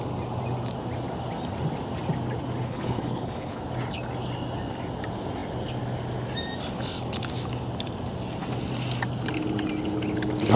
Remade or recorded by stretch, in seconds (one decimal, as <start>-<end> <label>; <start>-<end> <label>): 0.0-2.6 recorded; 2.6-3.6 remade; 3.6-10.6 recorded